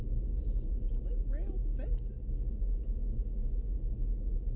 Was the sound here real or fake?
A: real